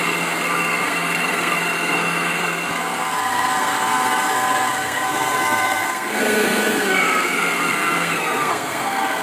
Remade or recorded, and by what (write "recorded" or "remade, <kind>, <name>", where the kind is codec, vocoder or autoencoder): remade, codec, SNAC